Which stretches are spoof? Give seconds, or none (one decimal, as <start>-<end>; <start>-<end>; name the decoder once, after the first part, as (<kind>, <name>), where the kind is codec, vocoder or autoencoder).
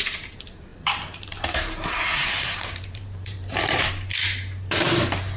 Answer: 0.7-3.9 (vocoder, BigVGAN v2)